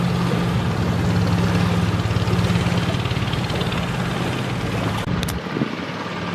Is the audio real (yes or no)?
yes